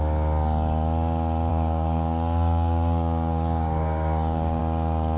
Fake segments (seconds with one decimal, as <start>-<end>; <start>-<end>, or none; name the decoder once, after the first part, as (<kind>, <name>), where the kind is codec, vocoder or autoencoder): 1.5-4.6 (codec, DAC)